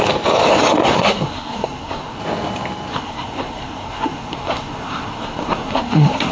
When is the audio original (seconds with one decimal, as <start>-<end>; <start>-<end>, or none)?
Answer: 0.0-0.8; 2.2-2.9